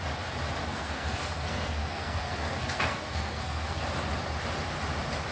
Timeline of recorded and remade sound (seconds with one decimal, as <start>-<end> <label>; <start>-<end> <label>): 0.0-0.6 recorded; 0.6-3.8 remade; 3.8-5.3 recorded